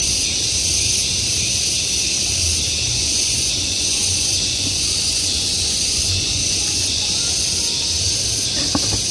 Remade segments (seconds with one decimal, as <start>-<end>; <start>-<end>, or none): 2.9-7.2